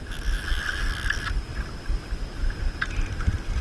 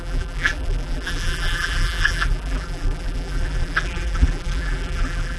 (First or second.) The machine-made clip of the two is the second